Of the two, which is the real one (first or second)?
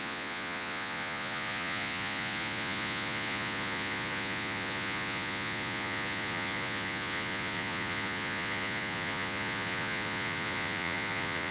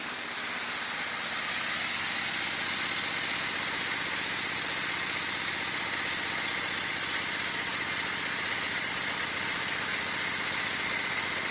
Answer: second